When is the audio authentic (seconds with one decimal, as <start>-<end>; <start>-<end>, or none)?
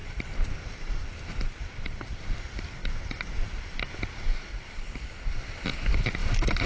2.2-2.8; 3.8-4.5; 5.4-6.2